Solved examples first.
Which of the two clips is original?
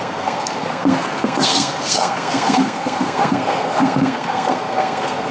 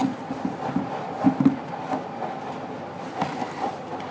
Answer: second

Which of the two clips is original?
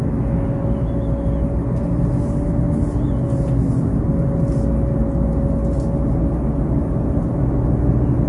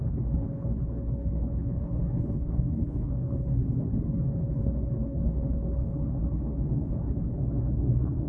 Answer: first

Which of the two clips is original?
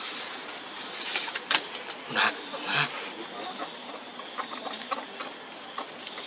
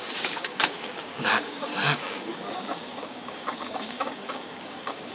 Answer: first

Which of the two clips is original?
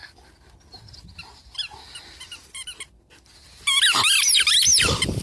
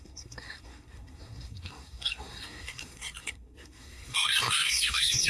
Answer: first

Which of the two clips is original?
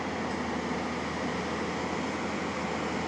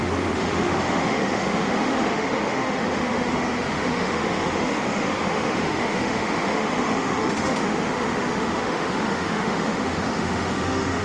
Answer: first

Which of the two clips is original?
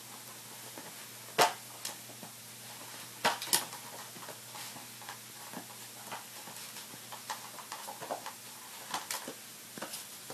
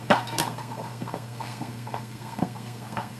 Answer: first